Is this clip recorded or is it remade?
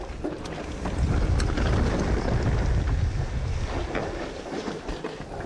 recorded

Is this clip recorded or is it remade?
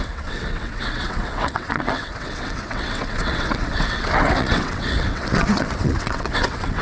remade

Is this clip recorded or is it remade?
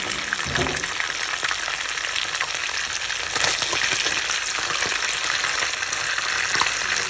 recorded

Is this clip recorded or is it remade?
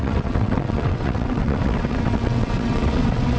remade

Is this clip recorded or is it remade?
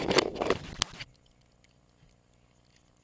recorded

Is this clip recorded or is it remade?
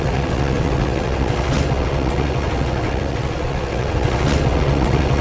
remade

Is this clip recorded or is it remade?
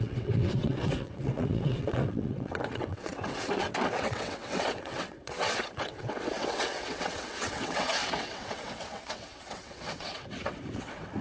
remade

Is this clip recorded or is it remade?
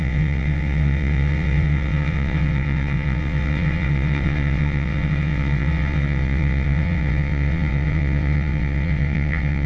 remade